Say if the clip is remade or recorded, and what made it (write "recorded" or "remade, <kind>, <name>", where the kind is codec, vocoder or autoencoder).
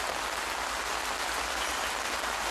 recorded